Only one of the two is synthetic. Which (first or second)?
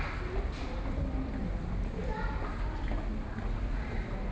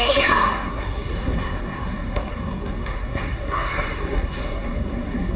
second